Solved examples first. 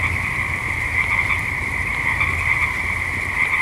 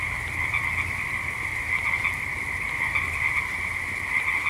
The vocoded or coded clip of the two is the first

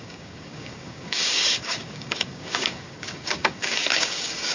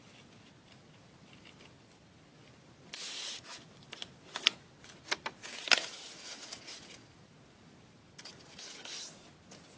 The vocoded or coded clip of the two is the first